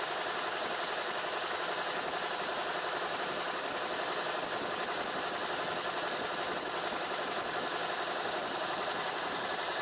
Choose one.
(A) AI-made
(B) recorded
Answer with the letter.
B